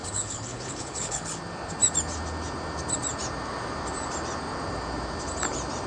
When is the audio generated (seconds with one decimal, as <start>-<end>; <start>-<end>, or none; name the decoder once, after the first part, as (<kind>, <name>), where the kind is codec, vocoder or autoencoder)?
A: 0.0-1.4 (codec, HILCodec)